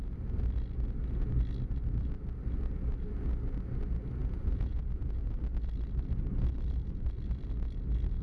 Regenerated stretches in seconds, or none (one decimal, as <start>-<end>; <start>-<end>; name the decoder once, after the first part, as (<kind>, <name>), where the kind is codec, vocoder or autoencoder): 4.2-5.2 (vocoder, Vocos)